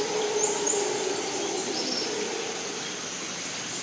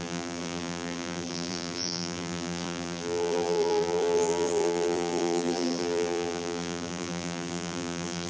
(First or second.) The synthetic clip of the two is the second